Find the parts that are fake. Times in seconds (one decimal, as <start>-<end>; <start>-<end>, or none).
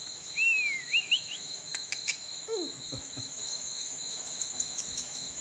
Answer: 0.0-5.4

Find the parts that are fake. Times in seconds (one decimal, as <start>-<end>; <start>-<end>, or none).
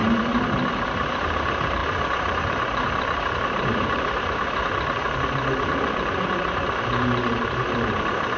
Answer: 0.7-8.4